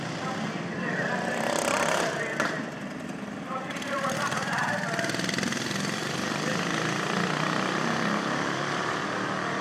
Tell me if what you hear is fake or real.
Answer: fake